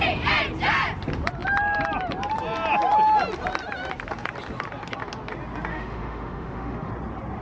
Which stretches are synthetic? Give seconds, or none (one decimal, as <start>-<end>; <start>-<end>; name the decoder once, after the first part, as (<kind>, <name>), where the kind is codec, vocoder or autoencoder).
5.7-6.9 (autoencoder, DAC-VAE)